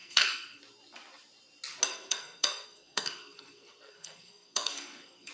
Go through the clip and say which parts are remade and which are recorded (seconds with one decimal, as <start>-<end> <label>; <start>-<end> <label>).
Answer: 0.0-0.6 remade; 0.6-1.9 recorded; 1.9-5.3 remade